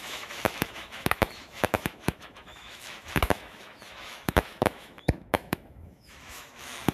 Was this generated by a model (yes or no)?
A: yes